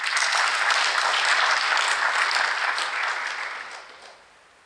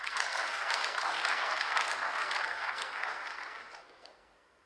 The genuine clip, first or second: first